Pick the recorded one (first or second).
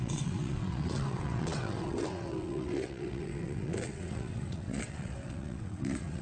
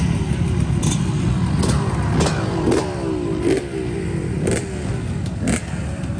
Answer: second